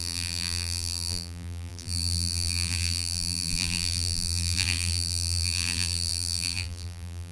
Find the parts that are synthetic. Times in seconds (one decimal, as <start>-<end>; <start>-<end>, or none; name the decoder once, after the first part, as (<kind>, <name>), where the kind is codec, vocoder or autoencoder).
0.0-7.3 (vocoder, BigVGAN v2)